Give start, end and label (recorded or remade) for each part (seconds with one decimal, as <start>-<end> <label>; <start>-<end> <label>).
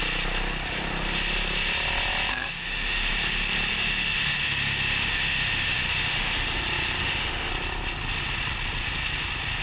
0.0-2.3 recorded; 2.3-3.1 remade; 3.1-3.7 recorded; 3.7-6.6 remade; 6.6-7.0 recorded; 7.0-7.5 remade; 7.5-9.6 recorded